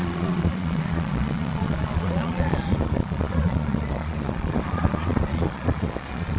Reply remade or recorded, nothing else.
remade